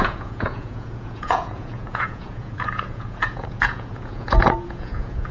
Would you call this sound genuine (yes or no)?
no